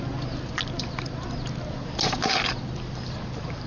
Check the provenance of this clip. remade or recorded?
recorded